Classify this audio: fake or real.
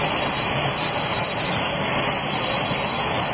real